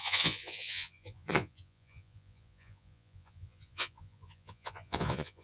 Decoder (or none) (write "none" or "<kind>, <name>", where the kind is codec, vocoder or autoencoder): vocoder, Vocos